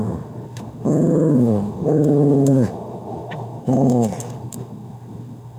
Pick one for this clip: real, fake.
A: fake